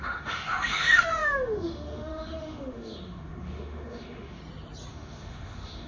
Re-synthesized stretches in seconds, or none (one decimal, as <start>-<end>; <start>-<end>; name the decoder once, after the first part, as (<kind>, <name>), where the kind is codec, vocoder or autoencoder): 0.0-4.4 (autoencoder, DAC-VAE); 4.9-5.9